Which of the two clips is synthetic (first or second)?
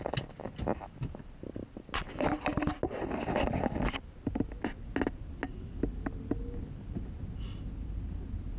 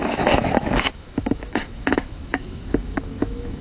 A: second